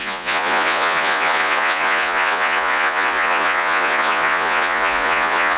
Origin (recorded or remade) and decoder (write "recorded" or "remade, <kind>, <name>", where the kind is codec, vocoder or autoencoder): remade, vocoder, Vocos